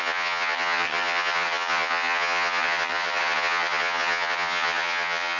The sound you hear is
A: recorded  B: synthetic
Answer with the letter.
B